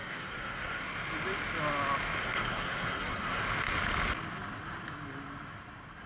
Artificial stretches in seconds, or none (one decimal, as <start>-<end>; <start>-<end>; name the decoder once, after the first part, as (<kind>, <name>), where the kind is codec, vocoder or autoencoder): 0.0-0.8 (codec, SNAC); 2.2-3.4